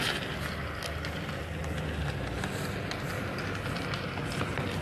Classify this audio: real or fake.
real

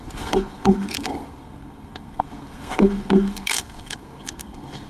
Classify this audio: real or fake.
fake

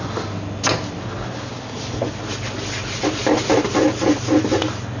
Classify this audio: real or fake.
real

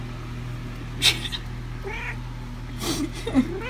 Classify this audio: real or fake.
real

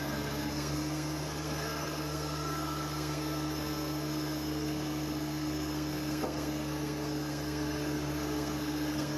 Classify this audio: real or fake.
fake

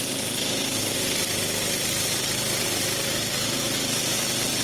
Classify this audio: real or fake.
real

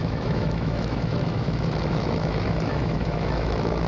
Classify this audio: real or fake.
fake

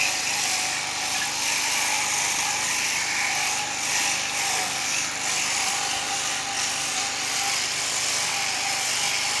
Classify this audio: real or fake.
real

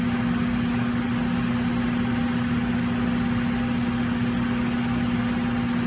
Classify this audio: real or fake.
real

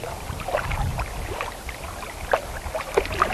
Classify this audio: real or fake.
real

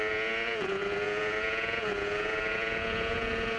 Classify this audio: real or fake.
fake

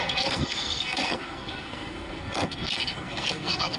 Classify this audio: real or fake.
fake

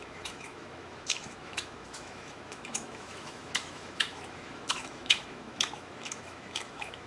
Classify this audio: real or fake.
fake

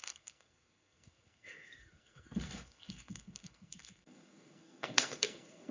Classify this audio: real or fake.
fake